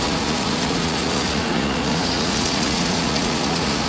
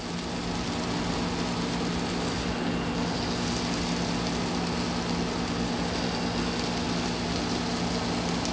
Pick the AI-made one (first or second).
first